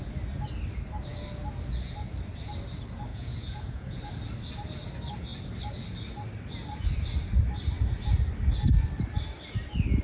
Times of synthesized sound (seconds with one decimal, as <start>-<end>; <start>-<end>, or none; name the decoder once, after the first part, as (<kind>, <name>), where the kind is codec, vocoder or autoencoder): 3.1-4.0 (vocoder, Vocos)